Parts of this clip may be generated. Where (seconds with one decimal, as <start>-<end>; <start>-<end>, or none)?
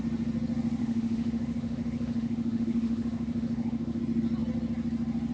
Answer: 0.8-4.0